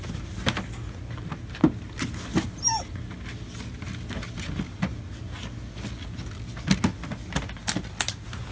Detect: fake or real real